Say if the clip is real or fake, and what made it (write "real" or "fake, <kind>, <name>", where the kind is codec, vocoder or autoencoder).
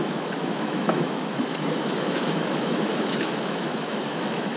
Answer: fake, autoencoder, DAC-VAE